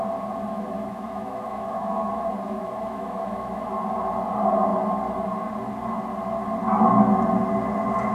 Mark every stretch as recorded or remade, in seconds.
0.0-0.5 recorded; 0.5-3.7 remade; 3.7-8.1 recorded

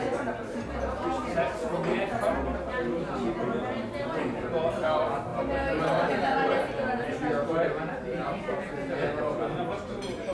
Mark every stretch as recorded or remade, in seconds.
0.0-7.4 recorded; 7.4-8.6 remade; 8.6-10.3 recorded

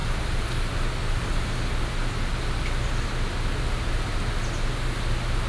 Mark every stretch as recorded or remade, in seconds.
0.0-5.5 recorded

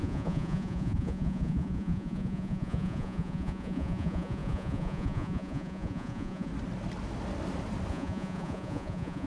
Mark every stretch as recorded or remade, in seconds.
0.0-6.5 remade; 6.5-7.9 recorded; 7.9-9.3 remade

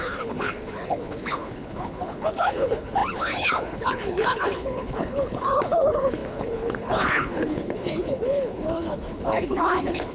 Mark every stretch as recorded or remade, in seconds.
0.0-10.1 remade

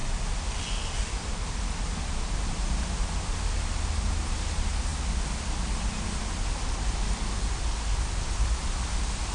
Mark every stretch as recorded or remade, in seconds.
0.0-9.3 recorded